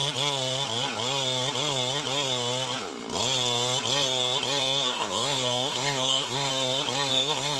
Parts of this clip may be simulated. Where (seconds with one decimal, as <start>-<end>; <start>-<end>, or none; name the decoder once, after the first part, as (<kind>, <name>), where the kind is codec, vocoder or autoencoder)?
4.6-6.5 (codec, SNAC); 7.1-7.6